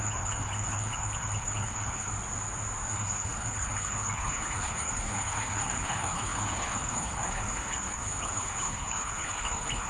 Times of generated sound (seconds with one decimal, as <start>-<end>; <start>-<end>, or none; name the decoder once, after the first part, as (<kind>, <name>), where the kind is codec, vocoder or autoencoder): 0.0-2.1 (codec, HILCodec); 2.9-9.9

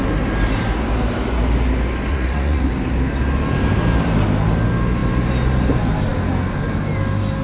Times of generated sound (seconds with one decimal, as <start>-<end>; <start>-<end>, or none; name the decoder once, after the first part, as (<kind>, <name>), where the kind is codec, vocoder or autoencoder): 2.1-2.7 (vocoder, Vocos)